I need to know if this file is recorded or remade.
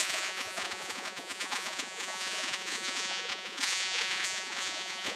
remade